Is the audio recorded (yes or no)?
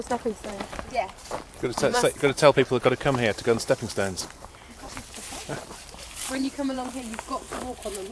no